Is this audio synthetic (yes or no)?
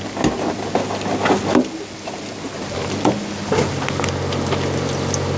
no